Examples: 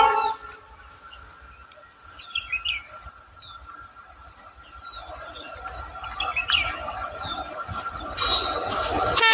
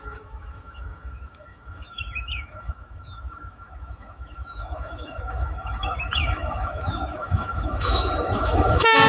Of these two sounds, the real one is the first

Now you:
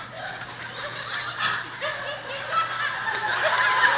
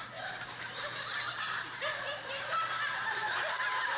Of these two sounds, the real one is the first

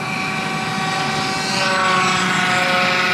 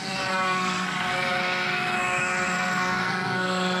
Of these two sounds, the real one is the first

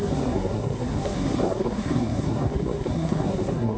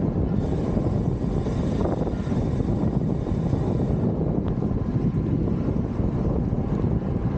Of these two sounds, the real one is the second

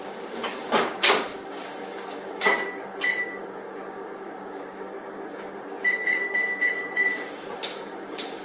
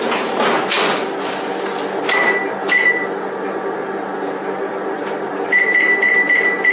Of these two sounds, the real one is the second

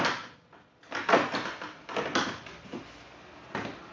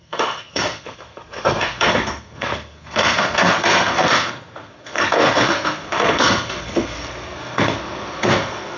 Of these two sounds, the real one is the first